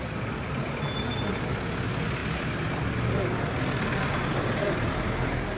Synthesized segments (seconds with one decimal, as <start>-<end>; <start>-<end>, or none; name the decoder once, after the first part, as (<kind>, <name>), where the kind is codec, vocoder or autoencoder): none